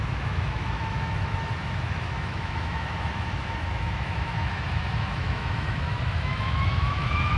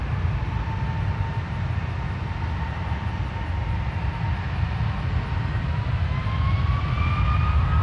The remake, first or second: first